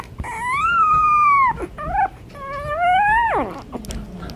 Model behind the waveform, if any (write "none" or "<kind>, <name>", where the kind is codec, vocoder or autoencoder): none